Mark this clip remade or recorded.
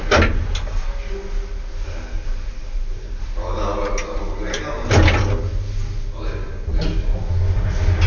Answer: recorded